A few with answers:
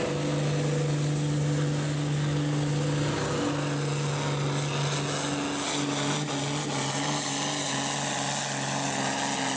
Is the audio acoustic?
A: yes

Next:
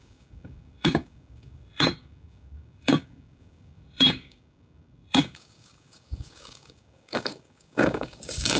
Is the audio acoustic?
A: no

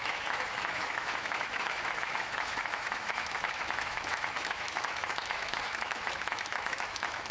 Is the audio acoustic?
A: no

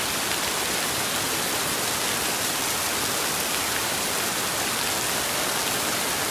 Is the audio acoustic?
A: yes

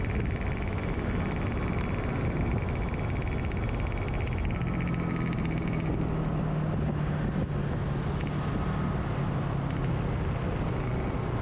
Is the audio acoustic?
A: yes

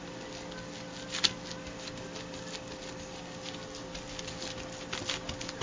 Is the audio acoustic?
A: yes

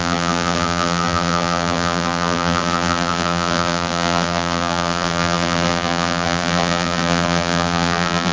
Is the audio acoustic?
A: no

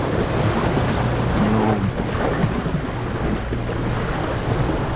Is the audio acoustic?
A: yes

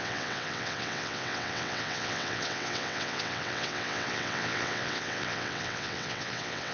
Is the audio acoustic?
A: no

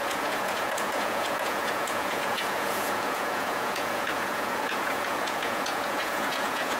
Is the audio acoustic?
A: no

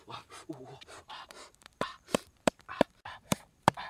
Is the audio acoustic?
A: no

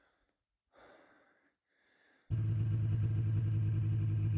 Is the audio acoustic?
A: yes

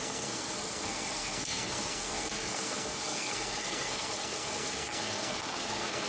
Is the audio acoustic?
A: no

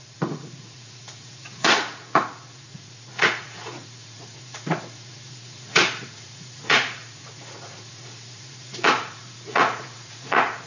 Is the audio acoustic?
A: no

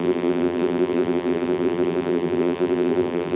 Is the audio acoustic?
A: no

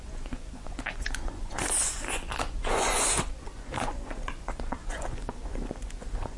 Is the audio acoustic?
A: no